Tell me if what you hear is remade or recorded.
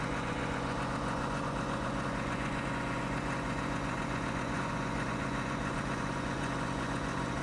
remade